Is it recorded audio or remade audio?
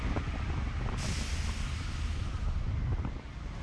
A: recorded